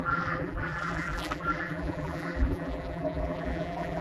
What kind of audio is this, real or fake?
fake